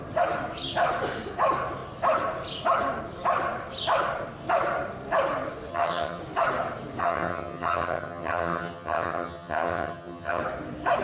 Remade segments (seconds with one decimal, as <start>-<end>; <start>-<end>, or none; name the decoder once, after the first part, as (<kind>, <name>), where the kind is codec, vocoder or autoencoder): 5.7-6.2 (vocoder, HiFi-GAN); 7.0-10.4